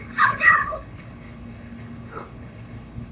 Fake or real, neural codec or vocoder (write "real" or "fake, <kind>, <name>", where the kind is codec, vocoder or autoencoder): fake, codec, HILCodec